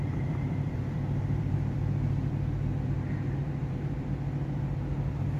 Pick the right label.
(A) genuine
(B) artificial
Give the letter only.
B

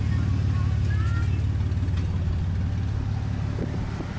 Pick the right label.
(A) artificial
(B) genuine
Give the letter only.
B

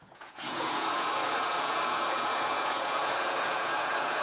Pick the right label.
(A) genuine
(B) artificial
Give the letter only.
B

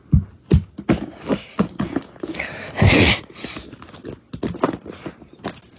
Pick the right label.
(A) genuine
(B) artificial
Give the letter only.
A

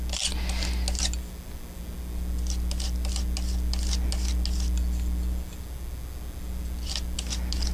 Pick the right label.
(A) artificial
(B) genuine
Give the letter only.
B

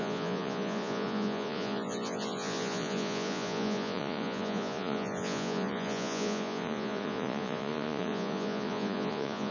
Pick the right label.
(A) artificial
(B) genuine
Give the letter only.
A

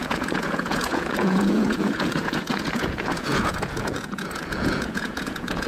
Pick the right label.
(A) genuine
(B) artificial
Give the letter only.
B